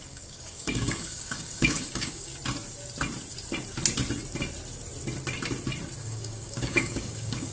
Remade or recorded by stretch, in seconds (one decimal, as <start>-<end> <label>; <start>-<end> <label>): 0.0-2.3 remade; 2.3-6.0 recorded; 6.0-7.5 remade

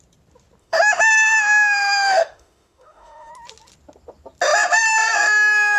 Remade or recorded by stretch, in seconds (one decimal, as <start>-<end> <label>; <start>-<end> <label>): 0.0-0.6 recorded; 0.6-3.3 remade; 3.3-5.8 recorded